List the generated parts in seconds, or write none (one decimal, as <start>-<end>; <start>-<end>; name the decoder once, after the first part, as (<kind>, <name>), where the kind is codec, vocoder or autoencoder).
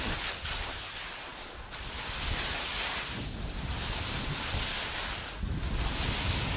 none